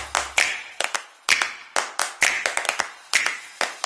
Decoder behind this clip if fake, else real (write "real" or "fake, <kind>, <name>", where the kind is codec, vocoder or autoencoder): real